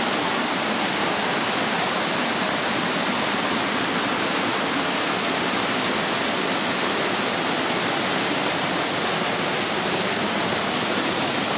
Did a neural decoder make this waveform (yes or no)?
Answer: yes